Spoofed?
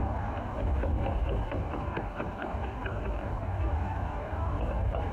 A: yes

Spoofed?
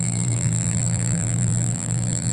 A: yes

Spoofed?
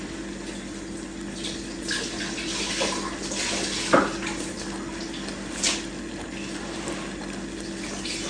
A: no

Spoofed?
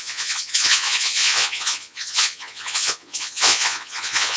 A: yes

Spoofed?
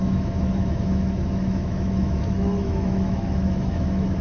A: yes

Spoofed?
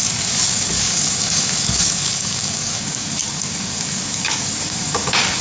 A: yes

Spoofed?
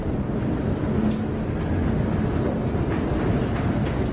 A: no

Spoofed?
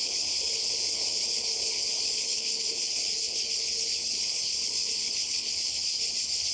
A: yes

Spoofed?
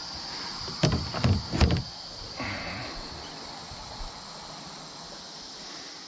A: no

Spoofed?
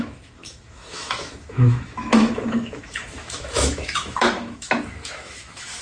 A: yes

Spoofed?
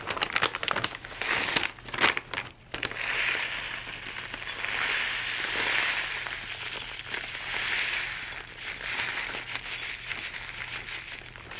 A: no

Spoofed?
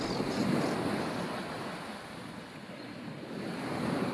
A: no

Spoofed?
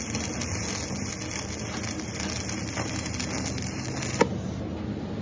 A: no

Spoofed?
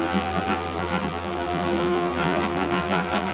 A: yes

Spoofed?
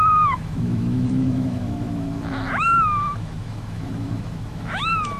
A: yes